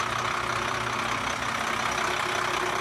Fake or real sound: real